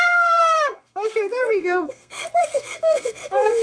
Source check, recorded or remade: remade